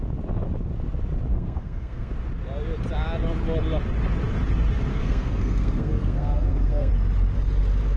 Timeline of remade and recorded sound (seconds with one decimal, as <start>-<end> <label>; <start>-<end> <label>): 0.0-1.3 recorded; 1.3-2.1 remade; 2.1-4.9 recorded; 4.9-6.9 remade; 6.9-8.0 recorded